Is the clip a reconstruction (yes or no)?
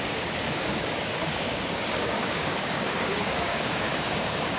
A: yes